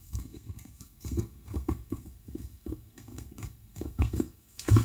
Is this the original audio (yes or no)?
no